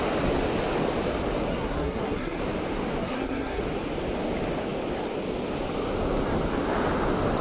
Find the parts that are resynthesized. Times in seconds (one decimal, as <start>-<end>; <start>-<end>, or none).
1.5-2.4; 3.0-3.6